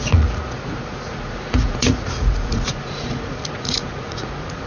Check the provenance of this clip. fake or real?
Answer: fake